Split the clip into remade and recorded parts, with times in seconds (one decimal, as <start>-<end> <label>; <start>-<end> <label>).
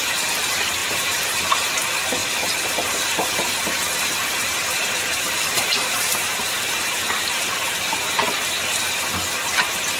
0.0-0.8 recorded; 0.8-1.4 remade; 1.4-2.2 recorded; 2.2-7.4 remade; 7.4-10.0 recorded